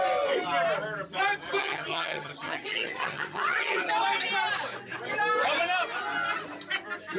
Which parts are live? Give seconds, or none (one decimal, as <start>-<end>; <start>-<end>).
0.0-1.6; 3.9-7.2